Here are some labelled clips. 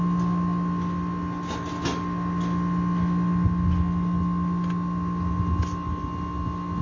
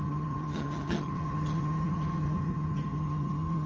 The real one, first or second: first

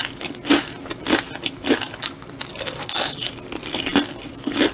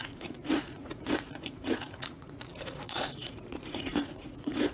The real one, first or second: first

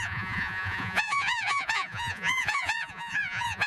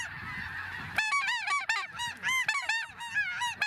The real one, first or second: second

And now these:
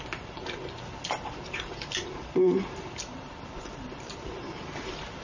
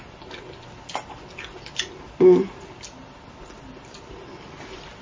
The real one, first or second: second